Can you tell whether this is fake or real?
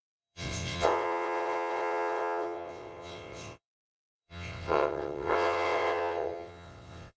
fake